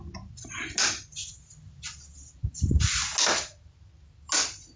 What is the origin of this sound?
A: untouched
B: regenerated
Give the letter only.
A